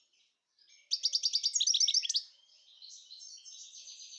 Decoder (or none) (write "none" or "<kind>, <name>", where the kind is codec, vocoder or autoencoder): none